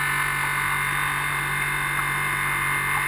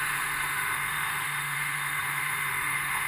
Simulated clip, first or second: second